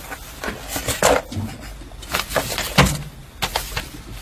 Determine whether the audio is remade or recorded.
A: recorded